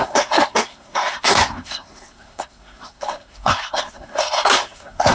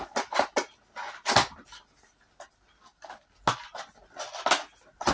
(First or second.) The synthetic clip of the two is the first